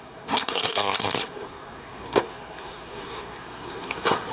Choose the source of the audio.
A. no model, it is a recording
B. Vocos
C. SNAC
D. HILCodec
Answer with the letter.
C